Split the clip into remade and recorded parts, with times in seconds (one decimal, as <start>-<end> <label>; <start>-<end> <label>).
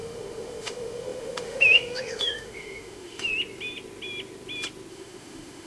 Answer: 0.0-3.3 remade; 3.3-4.9 recorded; 4.9-5.7 remade